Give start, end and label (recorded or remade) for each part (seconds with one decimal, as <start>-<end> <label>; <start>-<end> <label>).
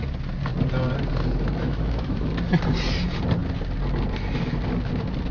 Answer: 0.0-1.6 recorded; 1.6-2.3 remade; 2.3-5.3 recorded